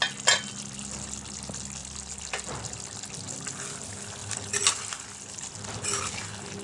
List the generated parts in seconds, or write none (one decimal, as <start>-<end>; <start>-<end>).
1.8-3.1; 4.2-5.6

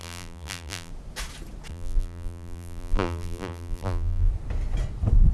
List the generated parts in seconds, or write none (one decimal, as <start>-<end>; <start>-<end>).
0.0-0.9; 1.7-4.3